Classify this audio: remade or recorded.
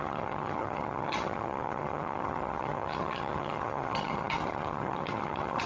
remade